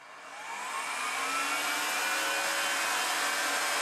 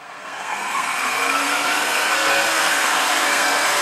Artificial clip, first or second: second